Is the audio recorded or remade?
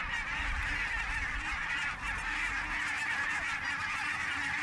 recorded